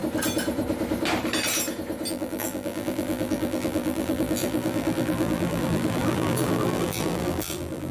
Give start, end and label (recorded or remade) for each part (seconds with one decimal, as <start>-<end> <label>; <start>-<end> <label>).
0.0-2.1 recorded; 2.1-7.9 remade